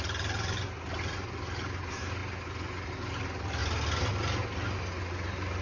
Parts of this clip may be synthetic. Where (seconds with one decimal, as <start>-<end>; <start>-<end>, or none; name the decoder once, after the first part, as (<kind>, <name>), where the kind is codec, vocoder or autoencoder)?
none